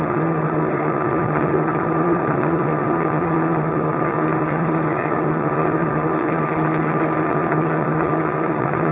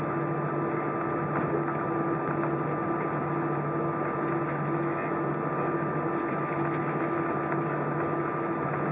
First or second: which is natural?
second